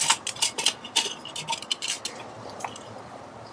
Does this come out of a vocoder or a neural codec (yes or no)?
no